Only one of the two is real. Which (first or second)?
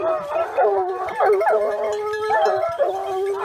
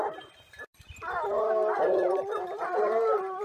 first